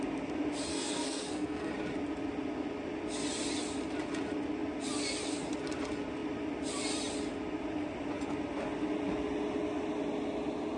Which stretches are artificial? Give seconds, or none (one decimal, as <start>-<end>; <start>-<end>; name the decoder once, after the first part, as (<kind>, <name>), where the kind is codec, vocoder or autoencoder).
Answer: 0.7-1.7 (codec, SNAC)